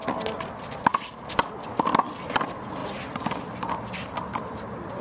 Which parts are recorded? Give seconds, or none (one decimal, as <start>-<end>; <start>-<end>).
0.0-2.8; 3.4-5.0